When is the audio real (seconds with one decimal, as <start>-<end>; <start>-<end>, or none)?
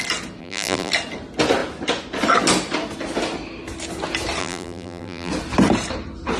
0.0-0.4; 0.9-4.4; 5.3-6.4